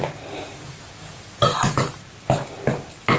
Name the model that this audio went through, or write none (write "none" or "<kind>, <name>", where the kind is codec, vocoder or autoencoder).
none